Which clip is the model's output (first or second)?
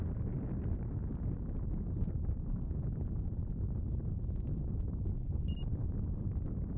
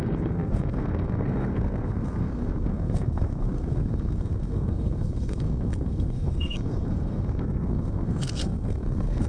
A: second